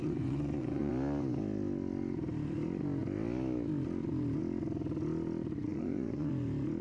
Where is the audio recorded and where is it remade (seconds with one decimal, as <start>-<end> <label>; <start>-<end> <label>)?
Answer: 0.0-0.9 remade; 0.9-5.7 recorded; 5.7-6.3 remade; 6.3-6.8 recorded

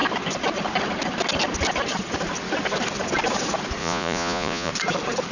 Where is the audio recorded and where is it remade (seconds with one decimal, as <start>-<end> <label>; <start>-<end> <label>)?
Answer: 0.0-3.8 recorded; 3.8-4.7 remade; 4.7-5.3 recorded

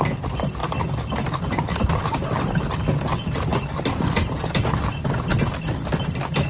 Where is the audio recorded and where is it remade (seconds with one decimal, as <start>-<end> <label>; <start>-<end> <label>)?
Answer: 0.0-6.5 recorded

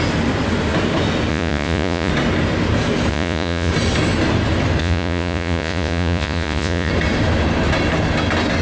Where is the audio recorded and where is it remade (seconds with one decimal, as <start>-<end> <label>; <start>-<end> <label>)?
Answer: 0.0-1.3 recorded; 1.3-2.1 remade; 2.1-3.1 recorded; 3.1-3.7 remade; 3.7-4.8 recorded; 4.8-6.9 remade; 6.9-8.6 recorded

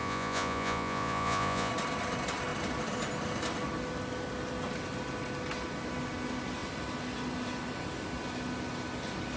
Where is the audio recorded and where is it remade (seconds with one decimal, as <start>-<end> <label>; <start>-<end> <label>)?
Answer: 0.0-1.7 remade; 1.7-9.4 recorded